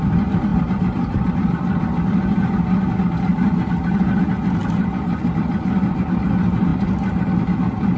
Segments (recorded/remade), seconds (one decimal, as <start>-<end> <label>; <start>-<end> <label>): 0.0-0.5 recorded; 0.5-1.8 remade; 1.8-4.6 recorded; 4.6-5.9 remade; 5.9-8.0 recorded